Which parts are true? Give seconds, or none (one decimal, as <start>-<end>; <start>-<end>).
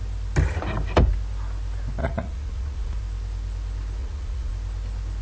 0.0-2.0; 3.0-4.0; 4.5-5.2